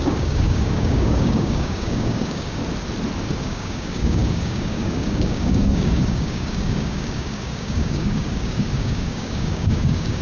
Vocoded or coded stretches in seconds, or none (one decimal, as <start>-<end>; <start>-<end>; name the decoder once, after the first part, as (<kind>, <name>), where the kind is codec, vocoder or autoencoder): 0.0-2.6 (codec, DAC); 3.4-10.2